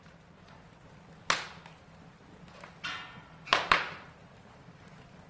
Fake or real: real